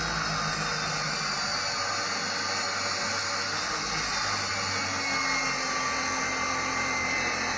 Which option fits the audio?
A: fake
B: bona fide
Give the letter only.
B